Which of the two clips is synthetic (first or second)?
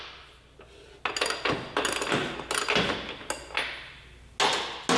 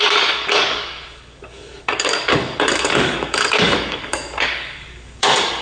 second